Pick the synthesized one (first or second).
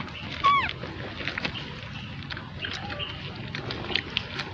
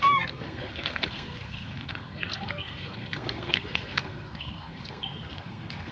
second